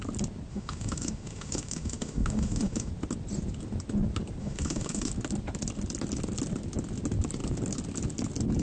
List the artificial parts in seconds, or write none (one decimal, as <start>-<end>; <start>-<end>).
0.5-2.9; 4.4-5.1